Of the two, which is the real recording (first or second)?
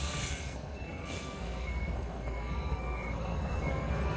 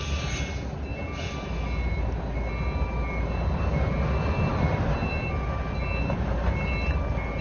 second